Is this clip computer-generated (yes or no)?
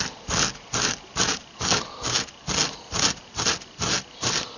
no